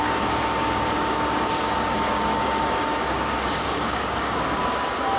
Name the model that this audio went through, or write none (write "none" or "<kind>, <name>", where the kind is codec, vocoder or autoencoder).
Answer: codec, DAC